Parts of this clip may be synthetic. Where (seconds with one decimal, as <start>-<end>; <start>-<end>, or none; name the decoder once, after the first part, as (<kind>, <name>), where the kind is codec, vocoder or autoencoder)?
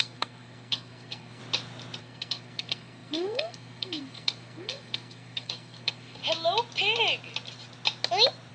0.0-1.4 (codec, SNAC); 2.0-6.2